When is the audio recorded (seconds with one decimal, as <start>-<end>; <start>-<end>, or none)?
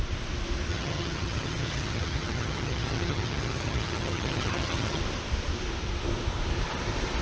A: 0.0-0.7; 5.0-7.2